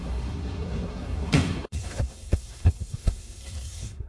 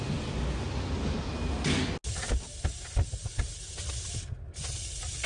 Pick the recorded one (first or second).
second